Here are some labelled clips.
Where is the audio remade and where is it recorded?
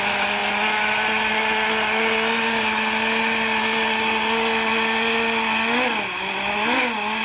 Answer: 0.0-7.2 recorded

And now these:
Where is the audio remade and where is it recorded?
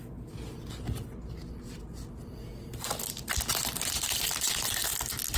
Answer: 0.0-5.4 recorded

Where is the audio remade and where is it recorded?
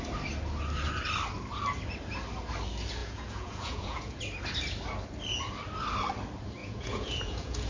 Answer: 0.0-3.0 recorded; 3.0-4.2 remade; 4.2-6.6 recorded; 6.6-7.7 remade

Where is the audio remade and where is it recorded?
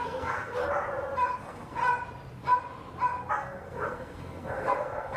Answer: 0.0-0.6 remade; 0.6-1.4 recorded; 1.4-1.8 remade; 1.8-3.3 recorded; 3.3-5.2 remade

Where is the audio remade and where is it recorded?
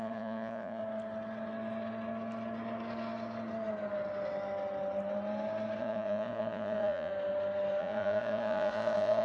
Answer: 0.0-0.8 remade; 0.8-5.8 recorded; 5.8-7.1 remade; 7.1-7.8 recorded; 7.8-9.2 remade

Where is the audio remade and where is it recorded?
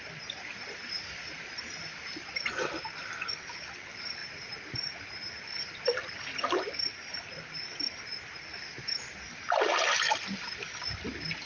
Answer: 0.0-11.5 recorded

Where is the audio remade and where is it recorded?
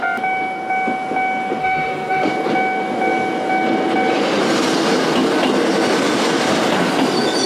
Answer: 0.0-1.6 recorded; 1.6-2.3 remade; 2.3-7.5 recorded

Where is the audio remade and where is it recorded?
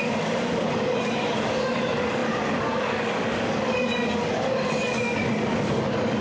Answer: 0.0-6.2 remade